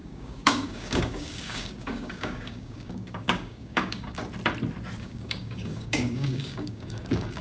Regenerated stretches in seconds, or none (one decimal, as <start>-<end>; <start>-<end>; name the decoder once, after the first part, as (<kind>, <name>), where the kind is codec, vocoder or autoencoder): 0.0-4.2 (codec, DAC); 5.0-7.4